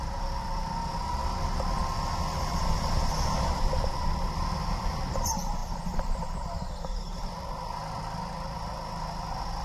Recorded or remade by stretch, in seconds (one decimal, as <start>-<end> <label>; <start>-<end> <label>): 0.0-9.6 recorded